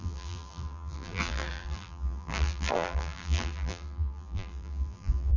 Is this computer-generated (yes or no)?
yes